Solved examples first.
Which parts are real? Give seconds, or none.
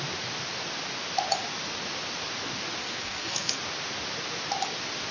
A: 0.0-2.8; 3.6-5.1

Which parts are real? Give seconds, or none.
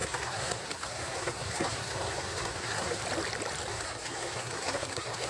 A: 3.0-3.7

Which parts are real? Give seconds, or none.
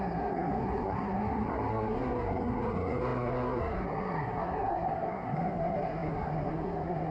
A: none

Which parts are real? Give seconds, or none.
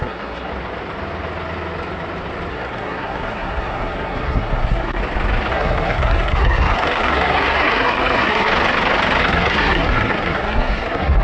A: 0.5-2.5; 5.0-5.5; 8.5-9.2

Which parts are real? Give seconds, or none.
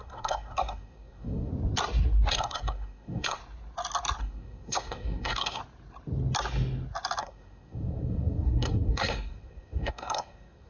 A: 1.5-2.3; 3.4-4.2; 5.6-7.2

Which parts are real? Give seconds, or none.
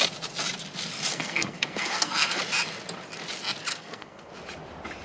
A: 0.0-1.1; 2.4-3.7; 4.3-5.0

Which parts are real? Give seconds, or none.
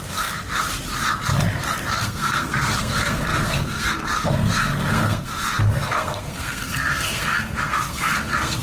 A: 0.4-1.9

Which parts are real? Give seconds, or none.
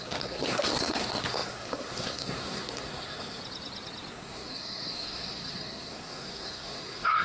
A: 3.4-4.1